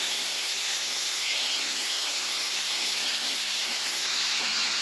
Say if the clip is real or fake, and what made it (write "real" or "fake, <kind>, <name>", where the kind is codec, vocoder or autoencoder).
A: fake, codec, SNAC